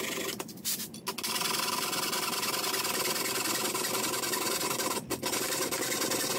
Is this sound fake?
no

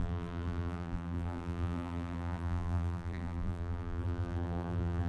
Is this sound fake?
yes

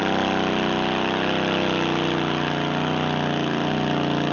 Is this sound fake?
no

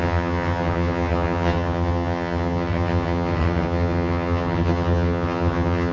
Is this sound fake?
yes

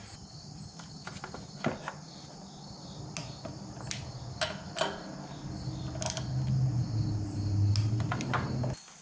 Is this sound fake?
no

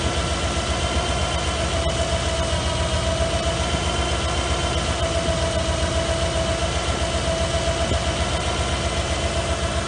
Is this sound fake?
no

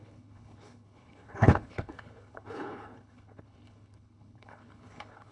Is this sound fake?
yes